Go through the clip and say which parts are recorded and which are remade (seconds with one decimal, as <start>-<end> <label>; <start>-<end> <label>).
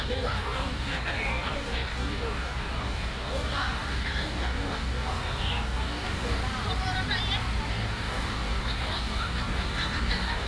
0.0-6.4 remade; 6.4-7.7 recorded; 7.7-10.5 remade